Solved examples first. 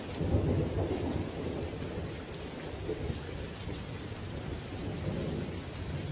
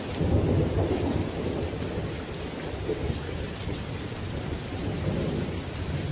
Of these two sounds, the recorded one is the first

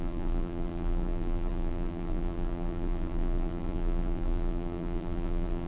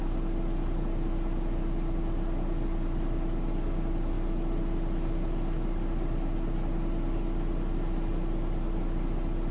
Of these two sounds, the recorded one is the second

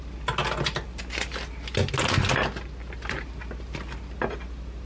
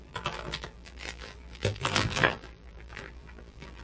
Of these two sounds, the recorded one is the first